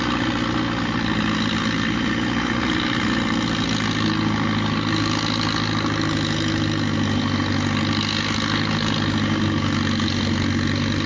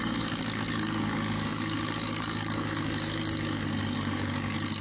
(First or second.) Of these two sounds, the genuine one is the first